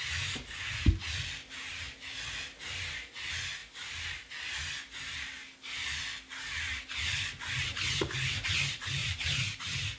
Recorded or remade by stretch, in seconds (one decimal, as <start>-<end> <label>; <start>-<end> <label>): 0.0-9.0 recorded; 9.0-9.6 remade; 9.6-10.0 recorded